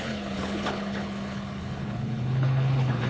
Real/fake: fake